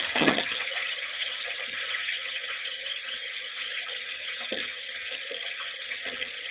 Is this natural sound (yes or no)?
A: no